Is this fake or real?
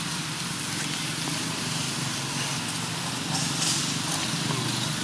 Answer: real